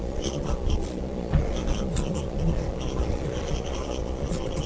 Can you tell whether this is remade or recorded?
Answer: remade